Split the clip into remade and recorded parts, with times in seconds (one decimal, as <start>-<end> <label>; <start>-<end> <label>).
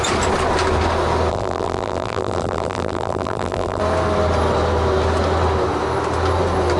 0.0-1.3 recorded; 1.3-3.8 remade; 3.8-6.8 recorded